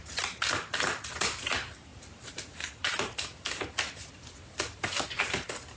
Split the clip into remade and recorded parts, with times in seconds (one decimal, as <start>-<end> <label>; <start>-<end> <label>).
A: 0.0-5.8 recorded